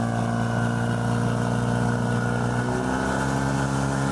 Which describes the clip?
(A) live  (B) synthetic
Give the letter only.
A